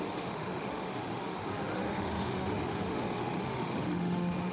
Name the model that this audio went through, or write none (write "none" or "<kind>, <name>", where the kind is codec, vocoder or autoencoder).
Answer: autoencoder, DAC-VAE